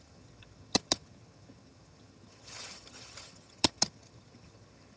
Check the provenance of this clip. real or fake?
fake